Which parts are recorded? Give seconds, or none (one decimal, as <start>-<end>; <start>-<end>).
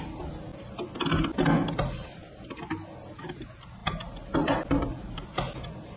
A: 0.0-6.0